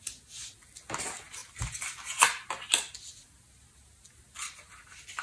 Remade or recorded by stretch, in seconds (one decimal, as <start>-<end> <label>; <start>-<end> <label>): 0.0-5.2 recorded